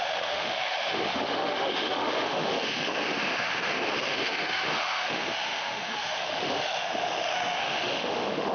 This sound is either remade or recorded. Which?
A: remade